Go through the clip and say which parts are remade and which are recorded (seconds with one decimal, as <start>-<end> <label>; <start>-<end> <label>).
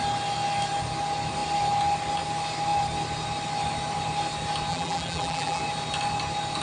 0.0-4.7 recorded; 4.7-5.6 remade; 5.6-6.6 recorded